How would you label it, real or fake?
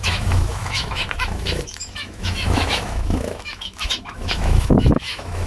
fake